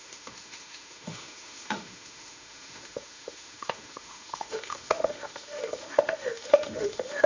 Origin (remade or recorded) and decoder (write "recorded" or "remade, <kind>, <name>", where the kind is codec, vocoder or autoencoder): remade, autoencoder, DAC-VAE